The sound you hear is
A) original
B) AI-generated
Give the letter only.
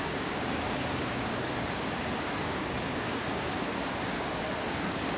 B